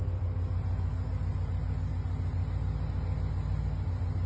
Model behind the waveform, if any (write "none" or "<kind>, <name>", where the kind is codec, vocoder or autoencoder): none